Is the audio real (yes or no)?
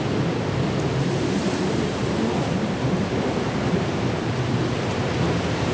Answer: no